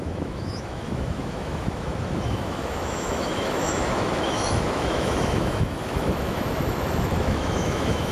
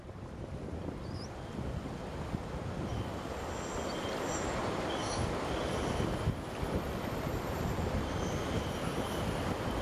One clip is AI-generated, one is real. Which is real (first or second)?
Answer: second